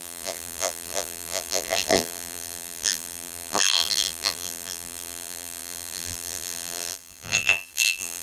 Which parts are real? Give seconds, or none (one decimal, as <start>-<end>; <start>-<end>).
none